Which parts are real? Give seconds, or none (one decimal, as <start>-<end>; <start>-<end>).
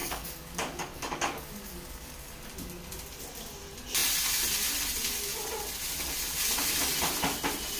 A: 2.4-7.8